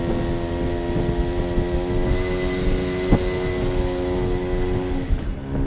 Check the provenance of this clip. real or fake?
real